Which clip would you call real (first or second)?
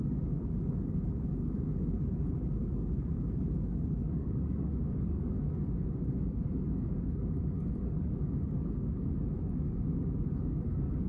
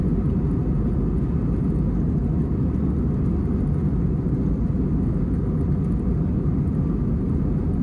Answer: second